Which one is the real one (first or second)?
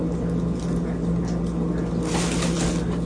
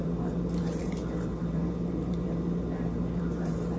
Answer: first